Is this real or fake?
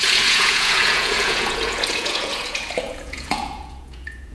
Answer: fake